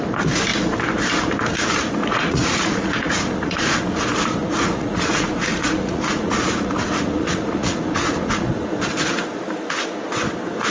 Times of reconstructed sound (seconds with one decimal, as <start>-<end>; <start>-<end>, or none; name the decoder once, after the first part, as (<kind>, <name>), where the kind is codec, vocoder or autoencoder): 2.0-3.7 (vocoder, Vocos); 4.4-8.5